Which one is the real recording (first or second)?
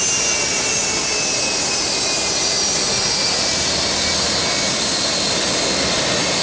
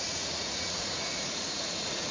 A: first